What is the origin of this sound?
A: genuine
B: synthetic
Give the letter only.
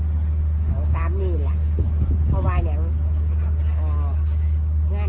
A